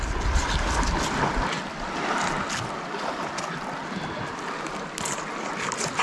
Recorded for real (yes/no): yes